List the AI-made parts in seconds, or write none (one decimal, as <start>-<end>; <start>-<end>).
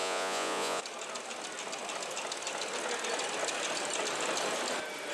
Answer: 0.0-0.8